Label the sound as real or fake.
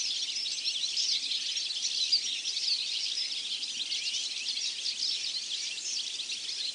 real